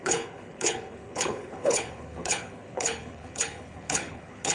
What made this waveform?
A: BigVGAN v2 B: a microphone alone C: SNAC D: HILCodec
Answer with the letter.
D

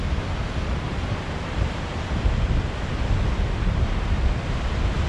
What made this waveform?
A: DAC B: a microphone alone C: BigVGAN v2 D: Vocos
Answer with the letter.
B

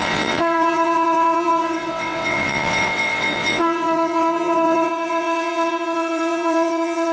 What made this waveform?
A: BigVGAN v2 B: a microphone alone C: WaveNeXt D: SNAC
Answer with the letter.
C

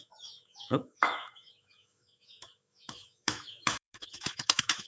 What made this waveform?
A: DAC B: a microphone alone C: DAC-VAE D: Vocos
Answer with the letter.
C